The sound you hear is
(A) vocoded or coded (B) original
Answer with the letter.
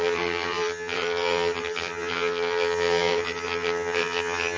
A